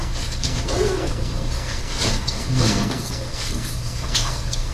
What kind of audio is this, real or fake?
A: fake